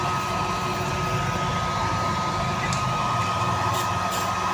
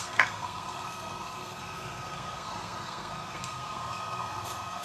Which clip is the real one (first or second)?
first